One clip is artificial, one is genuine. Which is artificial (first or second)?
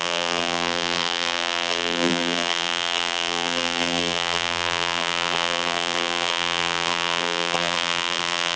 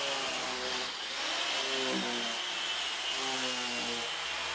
first